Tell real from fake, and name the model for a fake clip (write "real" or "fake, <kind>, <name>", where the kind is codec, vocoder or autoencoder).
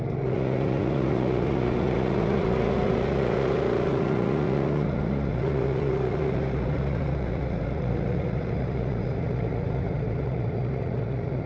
fake, vocoder, Vocos